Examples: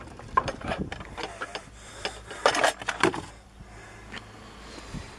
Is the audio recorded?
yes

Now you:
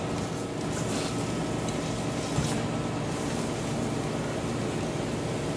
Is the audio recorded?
yes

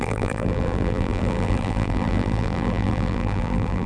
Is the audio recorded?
no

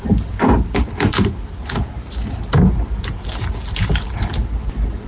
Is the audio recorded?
yes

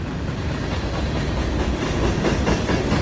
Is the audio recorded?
yes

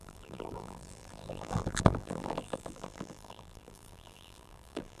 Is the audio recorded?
no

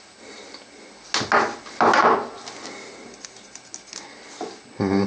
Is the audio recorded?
yes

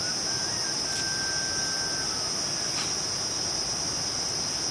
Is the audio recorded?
yes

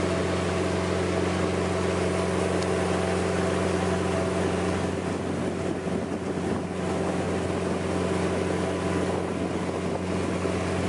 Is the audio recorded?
yes